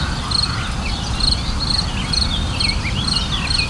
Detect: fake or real real